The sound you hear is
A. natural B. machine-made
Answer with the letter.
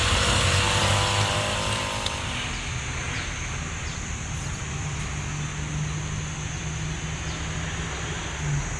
A